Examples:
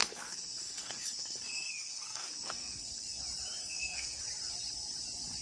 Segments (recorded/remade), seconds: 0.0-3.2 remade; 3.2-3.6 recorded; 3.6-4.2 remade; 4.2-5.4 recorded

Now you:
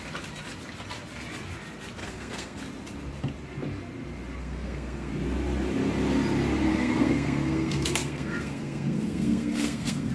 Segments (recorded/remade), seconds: 0.0-2.0 recorded; 2.0-2.6 remade; 2.6-4.4 recorded; 4.4-5.1 remade; 5.1-6.7 recorded; 6.7-10.1 remade